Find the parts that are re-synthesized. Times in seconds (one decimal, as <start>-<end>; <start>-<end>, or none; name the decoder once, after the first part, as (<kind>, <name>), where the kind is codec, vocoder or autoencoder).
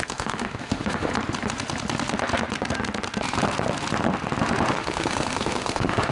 0.0-1.1 (autoencoder, DAC-VAE); 4.7-6.1